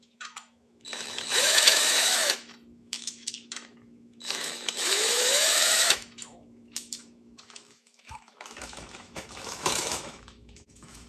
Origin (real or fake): fake